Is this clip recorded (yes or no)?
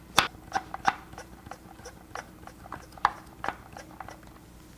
yes